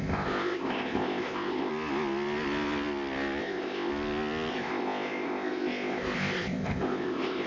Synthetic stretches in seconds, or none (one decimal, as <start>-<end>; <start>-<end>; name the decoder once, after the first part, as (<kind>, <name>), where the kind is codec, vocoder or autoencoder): 0.0-1.7 (codec, ZipCodec); 3.4-3.9; 4.5-7.5